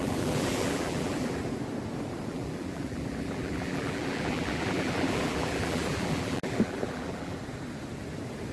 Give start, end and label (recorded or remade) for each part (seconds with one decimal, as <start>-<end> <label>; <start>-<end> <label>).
0.0-1.4 remade; 1.4-2.3 recorded; 2.3-7.4 remade; 7.4-8.5 recorded